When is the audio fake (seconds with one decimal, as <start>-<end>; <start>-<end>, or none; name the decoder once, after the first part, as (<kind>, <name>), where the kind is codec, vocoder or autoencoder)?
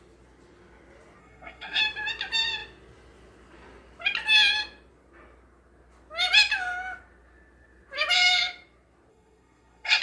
1.2-1.8 (codec, SNAC); 9.1-10.0